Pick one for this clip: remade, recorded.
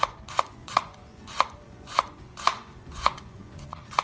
remade